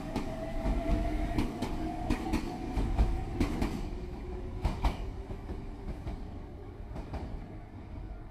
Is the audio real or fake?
fake